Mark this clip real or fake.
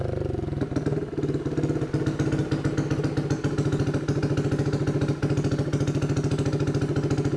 real